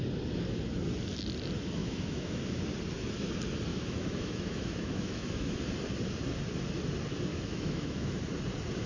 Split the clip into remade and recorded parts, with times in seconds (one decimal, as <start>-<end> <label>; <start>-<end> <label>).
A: 0.0-1.8 recorded; 1.8-2.6 remade; 2.6-3.7 recorded; 3.7-5.6 remade; 5.6-7.3 recorded; 7.3-8.1 remade; 8.1-8.9 recorded